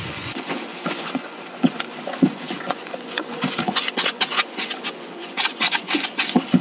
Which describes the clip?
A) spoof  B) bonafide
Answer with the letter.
A